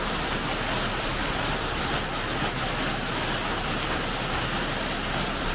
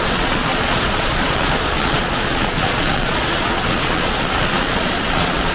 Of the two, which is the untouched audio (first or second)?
first